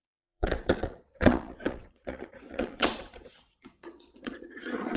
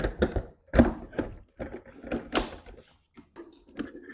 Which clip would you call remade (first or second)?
first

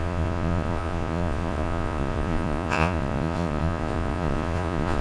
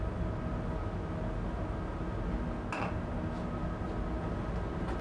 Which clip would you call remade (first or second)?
first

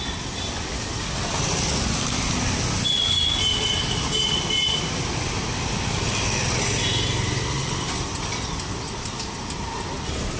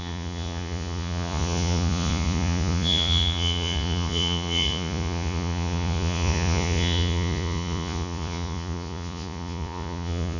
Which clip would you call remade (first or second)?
second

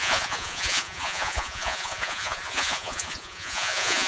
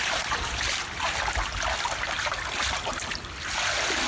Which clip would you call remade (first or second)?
first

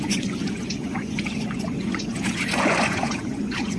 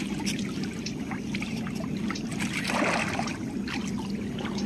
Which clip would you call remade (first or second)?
first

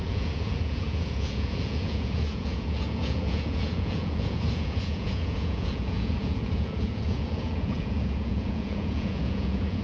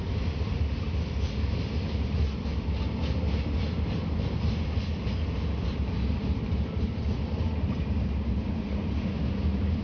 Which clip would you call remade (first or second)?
first